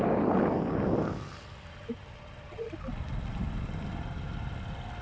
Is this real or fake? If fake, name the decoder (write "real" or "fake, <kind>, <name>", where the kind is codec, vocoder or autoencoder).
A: real